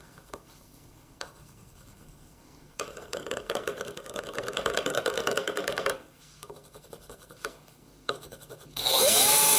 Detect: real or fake fake